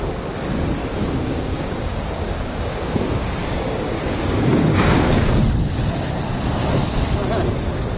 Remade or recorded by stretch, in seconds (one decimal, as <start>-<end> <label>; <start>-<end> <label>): 0.0-0.8 recorded; 0.8-5.3 remade; 5.3-8.0 recorded